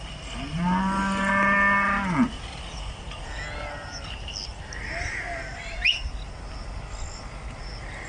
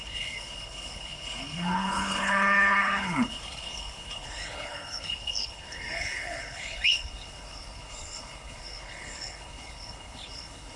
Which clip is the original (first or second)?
first